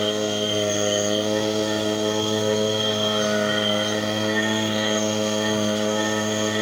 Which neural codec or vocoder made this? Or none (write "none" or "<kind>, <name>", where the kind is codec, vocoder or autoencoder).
codec, SNAC